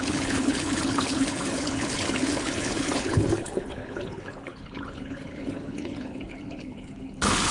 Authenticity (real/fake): fake